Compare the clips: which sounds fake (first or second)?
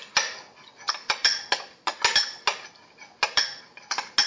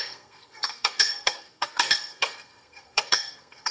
second